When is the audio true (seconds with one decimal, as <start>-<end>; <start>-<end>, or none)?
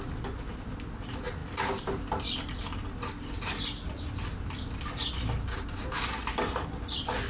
none